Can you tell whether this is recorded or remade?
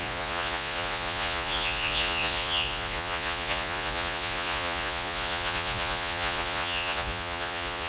remade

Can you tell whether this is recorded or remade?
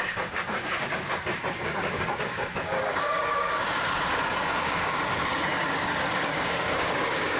remade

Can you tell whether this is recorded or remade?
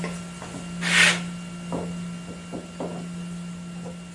recorded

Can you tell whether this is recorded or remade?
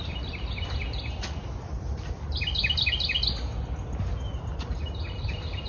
recorded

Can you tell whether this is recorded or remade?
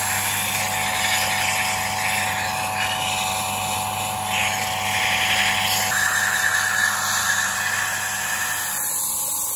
recorded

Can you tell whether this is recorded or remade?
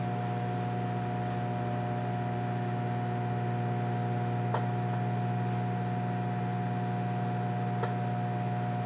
recorded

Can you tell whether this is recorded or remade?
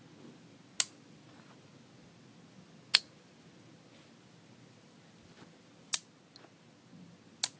recorded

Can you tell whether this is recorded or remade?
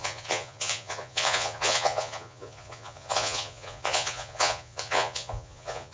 remade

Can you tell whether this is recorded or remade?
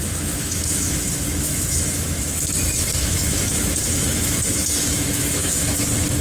remade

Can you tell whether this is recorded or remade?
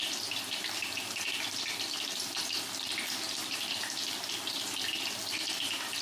remade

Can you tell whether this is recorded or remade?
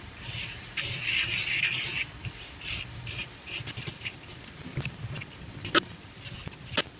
remade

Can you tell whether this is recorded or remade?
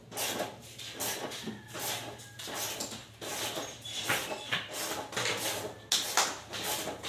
recorded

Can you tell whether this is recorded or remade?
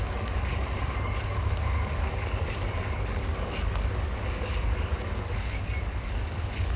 remade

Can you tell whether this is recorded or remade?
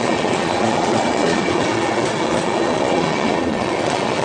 remade